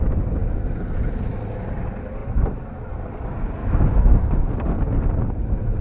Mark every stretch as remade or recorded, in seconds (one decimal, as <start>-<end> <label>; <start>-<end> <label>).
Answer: 0.0-3.6 recorded; 3.6-4.5 remade; 4.5-5.8 recorded